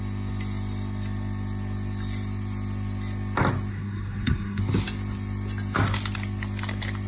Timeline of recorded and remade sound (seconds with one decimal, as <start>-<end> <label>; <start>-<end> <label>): 0.0-3.7 recorded; 3.7-4.6 remade; 4.6-7.1 recorded